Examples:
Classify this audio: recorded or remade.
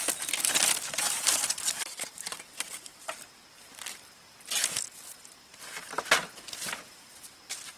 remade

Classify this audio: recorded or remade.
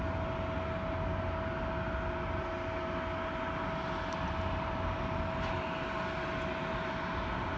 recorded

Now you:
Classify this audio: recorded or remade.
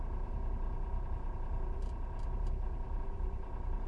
remade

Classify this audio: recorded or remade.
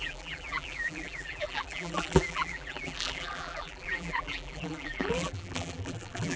remade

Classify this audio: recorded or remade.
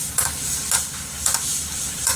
remade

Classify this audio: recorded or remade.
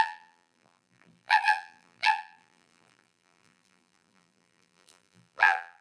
remade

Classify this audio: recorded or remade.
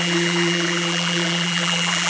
remade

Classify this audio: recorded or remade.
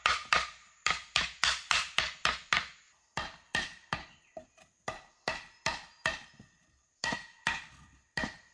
recorded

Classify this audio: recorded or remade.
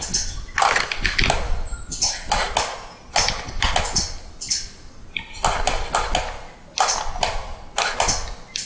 recorded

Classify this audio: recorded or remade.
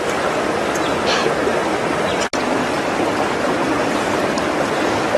recorded